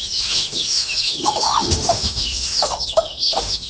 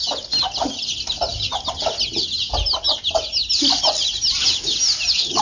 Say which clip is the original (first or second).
second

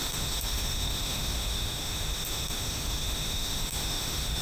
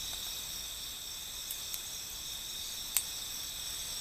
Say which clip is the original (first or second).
second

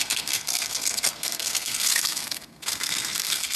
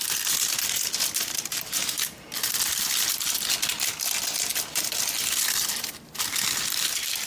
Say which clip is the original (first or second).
second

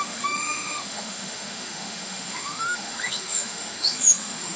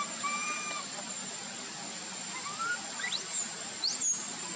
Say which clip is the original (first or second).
second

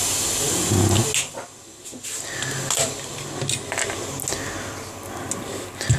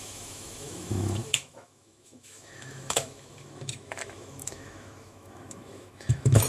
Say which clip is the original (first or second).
first